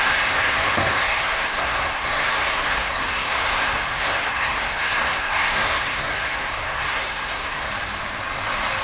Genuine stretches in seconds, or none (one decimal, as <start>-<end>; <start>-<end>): 7.7-8.8